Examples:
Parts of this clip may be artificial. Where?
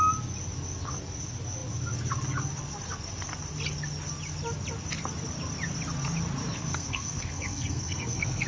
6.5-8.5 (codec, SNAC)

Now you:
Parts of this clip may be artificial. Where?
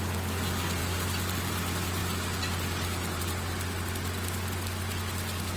none